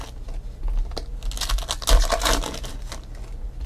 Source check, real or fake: real